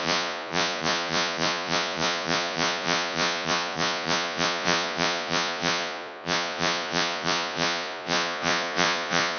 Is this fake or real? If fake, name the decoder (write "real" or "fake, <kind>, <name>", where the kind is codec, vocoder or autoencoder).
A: fake, vocoder, Vocos